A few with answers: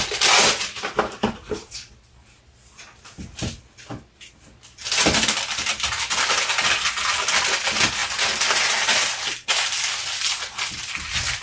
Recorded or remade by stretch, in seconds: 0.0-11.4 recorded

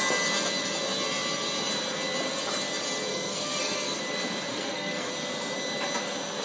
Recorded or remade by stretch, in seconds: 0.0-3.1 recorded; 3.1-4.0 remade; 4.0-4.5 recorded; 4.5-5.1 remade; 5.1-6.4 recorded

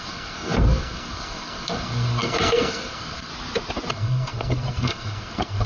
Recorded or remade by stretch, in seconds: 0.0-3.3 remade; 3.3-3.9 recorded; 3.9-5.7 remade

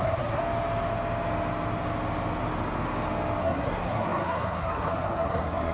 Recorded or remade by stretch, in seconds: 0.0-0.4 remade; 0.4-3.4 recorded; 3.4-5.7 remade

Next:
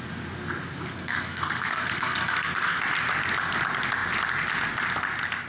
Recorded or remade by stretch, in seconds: 0.0-0.9 recorded; 0.9-2.8 remade; 2.8-5.5 recorded

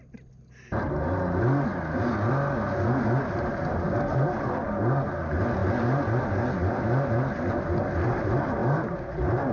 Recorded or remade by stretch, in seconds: 0.0-9.5 recorded

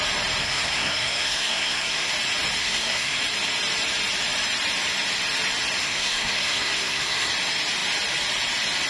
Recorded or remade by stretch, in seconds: 0.0-0.4 recorded; 0.4-2.1 remade; 2.1-2.6 recorded; 2.6-3.2 remade; 3.2-5.8 recorded; 5.8-7.3 remade; 7.3-8.9 recorded